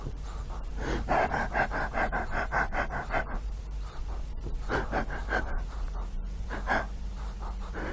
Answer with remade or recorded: remade